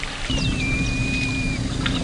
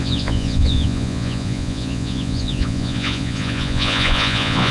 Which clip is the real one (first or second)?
first